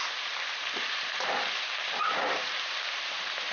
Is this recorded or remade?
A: remade